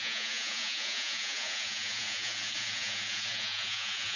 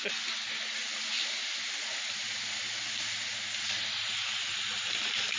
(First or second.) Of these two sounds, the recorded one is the second